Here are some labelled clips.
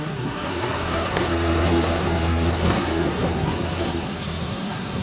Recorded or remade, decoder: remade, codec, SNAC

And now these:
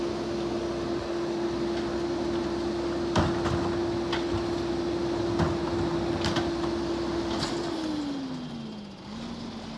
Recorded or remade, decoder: recorded